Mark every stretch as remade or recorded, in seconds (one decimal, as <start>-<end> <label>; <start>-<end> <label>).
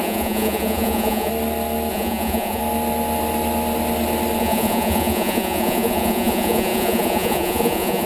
0.0-1.3 remade; 1.3-1.9 recorded; 1.9-2.6 remade; 2.6-4.4 recorded; 4.4-8.1 remade